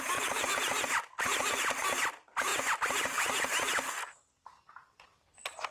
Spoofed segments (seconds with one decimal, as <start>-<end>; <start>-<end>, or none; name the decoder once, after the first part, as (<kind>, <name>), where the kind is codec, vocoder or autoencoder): none